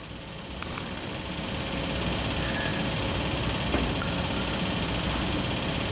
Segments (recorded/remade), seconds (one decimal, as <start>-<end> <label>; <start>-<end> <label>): 0.0-0.6 recorded; 0.6-1.1 remade; 1.1-2.7 recorded; 2.7-5.0 remade; 5.0-5.9 recorded